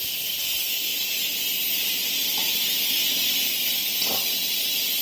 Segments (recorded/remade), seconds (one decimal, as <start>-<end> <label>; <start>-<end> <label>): 0.0-5.0 recorded